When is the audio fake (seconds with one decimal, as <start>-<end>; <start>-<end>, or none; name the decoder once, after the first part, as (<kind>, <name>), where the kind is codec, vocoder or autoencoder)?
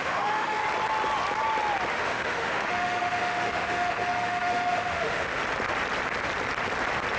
0.0-0.6 (autoencoder, DAC-VAE); 1.9-5.4